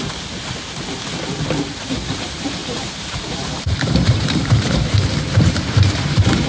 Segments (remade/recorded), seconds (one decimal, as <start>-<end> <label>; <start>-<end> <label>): 0.0-2.6 recorded; 2.6-6.5 remade